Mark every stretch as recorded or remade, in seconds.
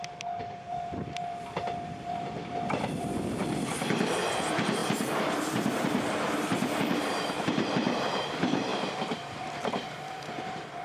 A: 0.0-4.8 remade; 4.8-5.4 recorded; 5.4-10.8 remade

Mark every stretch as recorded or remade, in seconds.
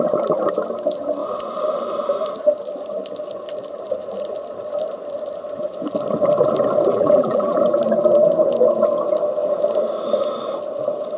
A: 0.0-6.9 recorded; 6.9-7.6 remade; 7.6-11.2 recorded